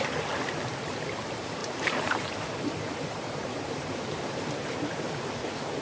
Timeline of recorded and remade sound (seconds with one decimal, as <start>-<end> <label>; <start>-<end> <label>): 0.0-1.6 recorded; 1.6-5.1 remade; 5.1-5.8 recorded